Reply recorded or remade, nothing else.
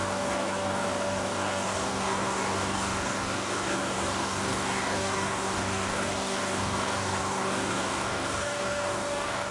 remade